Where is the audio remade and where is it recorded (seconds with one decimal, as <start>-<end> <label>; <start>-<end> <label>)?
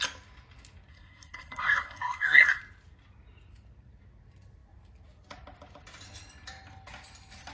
0.0-0.9 recorded; 0.9-2.6 remade; 2.6-7.5 recorded